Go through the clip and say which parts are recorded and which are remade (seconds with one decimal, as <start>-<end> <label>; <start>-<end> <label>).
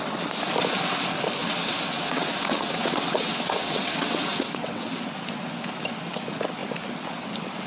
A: 0.0-1.4 recorded; 1.4-5.0 remade; 5.0-7.7 recorded